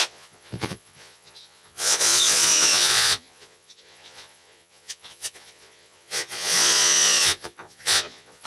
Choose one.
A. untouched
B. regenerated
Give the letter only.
B